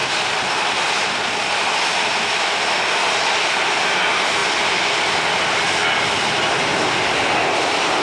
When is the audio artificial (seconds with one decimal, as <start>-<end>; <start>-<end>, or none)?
0.0-1.8; 4.4-5.4; 6.7-8.0